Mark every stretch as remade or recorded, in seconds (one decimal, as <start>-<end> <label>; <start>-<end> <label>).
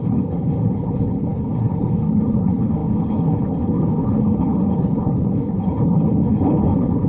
0.0-7.1 remade